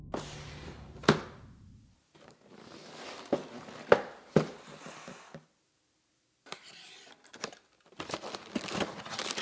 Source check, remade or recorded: recorded